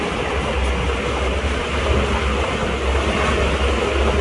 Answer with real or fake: real